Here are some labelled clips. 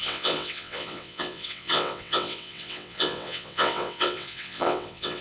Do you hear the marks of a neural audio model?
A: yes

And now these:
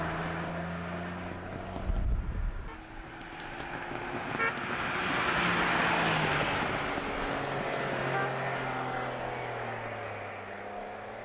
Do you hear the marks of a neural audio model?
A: no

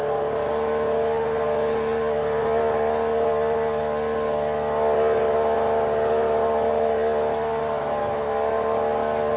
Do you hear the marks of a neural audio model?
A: no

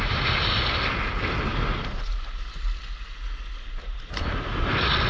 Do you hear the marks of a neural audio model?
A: no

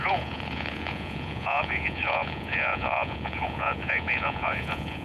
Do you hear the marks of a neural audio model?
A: yes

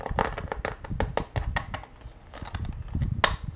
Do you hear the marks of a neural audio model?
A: no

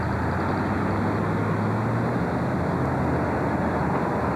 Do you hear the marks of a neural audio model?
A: no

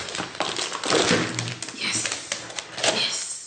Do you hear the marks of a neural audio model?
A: no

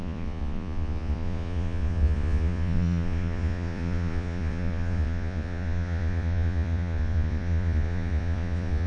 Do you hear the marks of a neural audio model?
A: yes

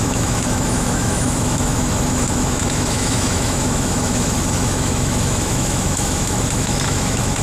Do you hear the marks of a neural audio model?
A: yes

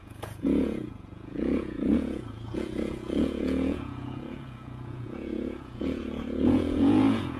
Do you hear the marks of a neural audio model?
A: yes